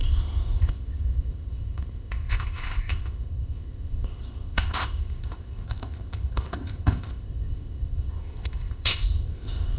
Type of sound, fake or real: fake